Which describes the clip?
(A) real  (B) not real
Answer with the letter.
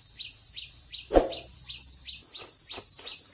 B